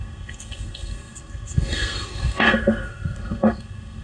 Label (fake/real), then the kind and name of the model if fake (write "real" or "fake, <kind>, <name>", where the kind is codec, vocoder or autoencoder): fake, codec, SNAC